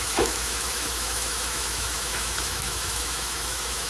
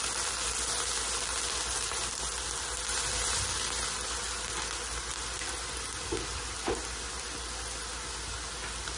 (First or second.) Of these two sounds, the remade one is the first